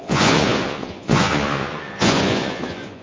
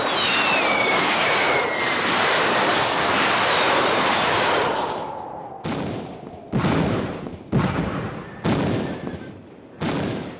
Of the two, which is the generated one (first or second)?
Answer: first